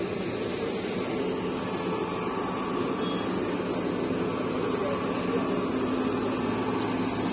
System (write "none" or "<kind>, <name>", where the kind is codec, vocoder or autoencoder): none